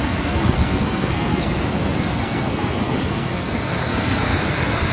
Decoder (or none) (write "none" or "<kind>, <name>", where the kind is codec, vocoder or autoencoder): codec, SNAC